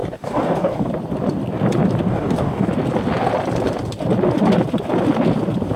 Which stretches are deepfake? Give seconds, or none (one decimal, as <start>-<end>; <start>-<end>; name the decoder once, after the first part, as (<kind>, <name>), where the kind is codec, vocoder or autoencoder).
0.0-0.9 (codec, DAC); 2.1-2.7